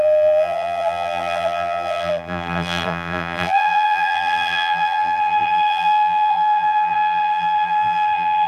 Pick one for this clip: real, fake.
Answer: fake